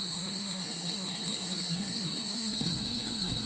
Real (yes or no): no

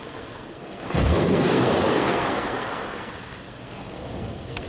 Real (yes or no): no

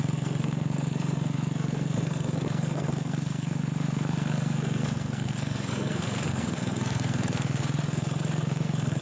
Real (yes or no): no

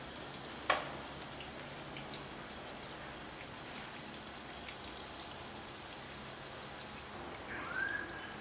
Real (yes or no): yes